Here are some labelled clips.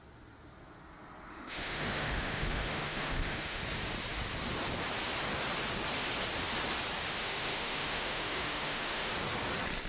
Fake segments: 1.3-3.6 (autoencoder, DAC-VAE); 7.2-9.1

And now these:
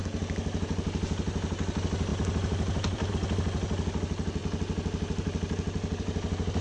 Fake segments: none

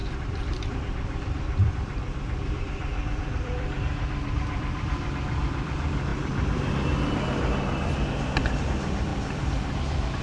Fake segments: 0.0-6.1 (vocoder, BigVGAN v2); 8.6-9.1